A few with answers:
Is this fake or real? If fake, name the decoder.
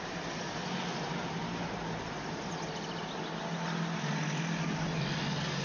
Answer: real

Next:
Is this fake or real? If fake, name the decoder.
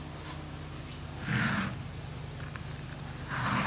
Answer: real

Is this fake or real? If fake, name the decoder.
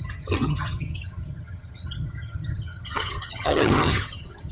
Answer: fake, vocoder, HiFi-GAN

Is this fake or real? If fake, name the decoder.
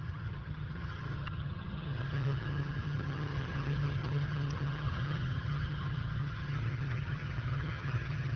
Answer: fake, vocoder, HiFi-GAN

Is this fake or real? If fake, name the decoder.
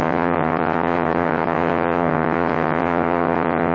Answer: fake, vocoder, HiFi-GAN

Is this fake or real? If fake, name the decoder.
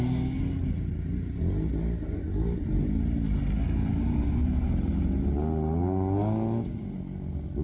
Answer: real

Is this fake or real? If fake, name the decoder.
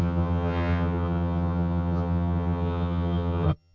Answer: fake, vocoder, HiFi-GAN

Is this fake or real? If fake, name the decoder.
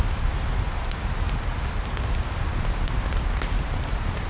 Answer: real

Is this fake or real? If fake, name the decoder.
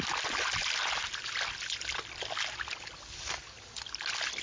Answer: real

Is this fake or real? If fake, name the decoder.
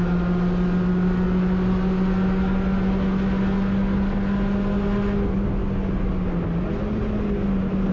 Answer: real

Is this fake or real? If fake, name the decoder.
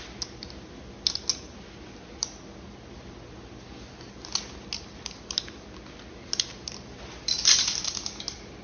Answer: real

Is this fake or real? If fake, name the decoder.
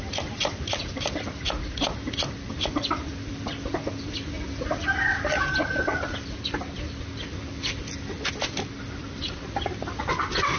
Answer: real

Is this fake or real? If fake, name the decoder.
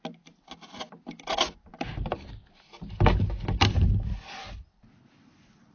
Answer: real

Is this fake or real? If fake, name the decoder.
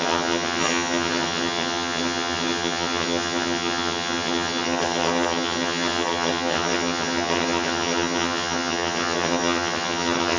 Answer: fake, vocoder, HiFi-GAN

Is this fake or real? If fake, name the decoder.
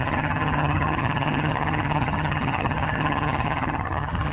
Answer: fake, vocoder, HiFi-GAN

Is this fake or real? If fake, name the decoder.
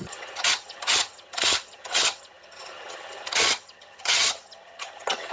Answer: fake, vocoder, HiFi-GAN